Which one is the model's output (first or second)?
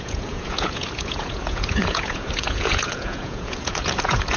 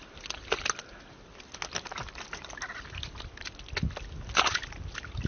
first